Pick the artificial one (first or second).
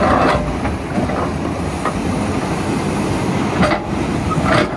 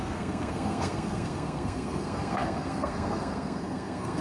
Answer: second